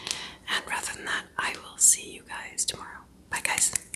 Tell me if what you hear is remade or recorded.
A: recorded